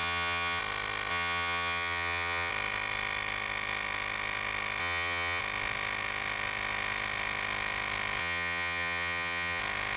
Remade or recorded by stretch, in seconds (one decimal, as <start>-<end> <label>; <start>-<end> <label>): 0.0-0.6 remade; 0.6-1.1 recorded; 1.1-2.5 remade; 2.5-4.8 recorded; 4.8-5.4 remade; 5.4-8.2 recorded; 8.2-9.6 remade; 9.6-10.0 recorded